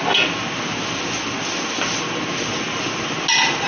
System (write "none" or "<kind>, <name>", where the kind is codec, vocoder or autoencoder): none